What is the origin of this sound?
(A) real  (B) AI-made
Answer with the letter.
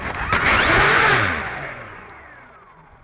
B